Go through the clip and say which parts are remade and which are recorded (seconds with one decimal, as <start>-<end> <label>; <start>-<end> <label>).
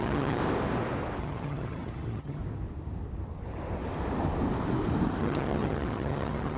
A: 0.0-0.4 remade; 0.4-1.2 recorded; 1.2-2.4 remade; 2.4-5.2 recorded; 5.2-6.6 remade